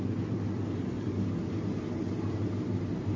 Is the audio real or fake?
real